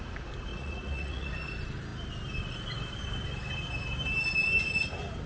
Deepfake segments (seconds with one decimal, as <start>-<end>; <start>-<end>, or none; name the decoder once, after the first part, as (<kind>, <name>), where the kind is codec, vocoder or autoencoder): 0.5-1.3 (vocoder, Vocos)